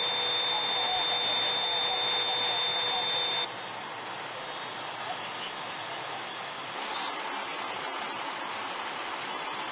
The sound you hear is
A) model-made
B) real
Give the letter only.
B